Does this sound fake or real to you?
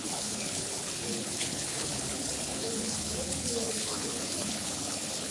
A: fake